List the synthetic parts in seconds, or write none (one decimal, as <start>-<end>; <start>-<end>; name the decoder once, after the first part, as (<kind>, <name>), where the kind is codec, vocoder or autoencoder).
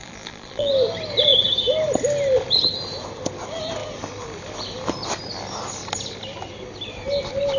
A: 0.0-0.7 (vocoder, BigVGAN v2)